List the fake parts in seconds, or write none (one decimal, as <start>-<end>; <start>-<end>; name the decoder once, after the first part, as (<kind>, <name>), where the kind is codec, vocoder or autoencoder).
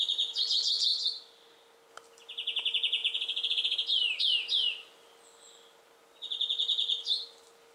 none